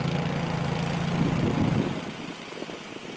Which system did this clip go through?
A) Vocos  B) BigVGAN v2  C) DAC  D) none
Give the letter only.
D